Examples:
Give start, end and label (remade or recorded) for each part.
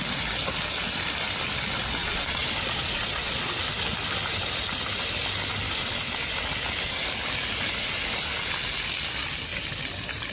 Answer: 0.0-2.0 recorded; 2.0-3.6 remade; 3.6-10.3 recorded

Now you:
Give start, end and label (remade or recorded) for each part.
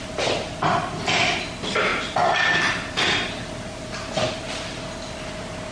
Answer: 0.0-5.7 recorded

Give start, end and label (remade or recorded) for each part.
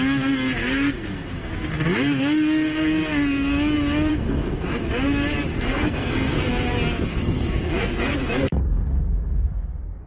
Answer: 0.0-0.6 recorded; 0.6-1.5 remade; 1.5-4.1 recorded; 4.1-4.8 remade; 4.8-5.5 recorded; 5.5-6.4 remade; 6.4-7.1 recorded; 7.1-10.1 remade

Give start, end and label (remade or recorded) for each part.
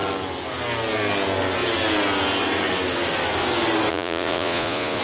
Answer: 0.0-3.9 recorded; 3.9-5.0 remade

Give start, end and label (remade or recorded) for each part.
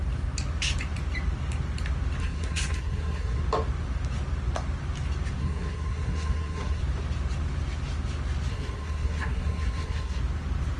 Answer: 0.0-2.2 recorded; 2.2-3.4 remade; 3.4-5.4 recorded; 5.4-6.8 remade; 6.8-8.5 recorded; 8.5-10.2 remade; 10.2-10.8 recorded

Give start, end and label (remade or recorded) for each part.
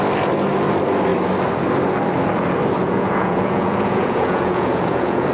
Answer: 0.0-2.8 recorded; 2.8-5.3 remade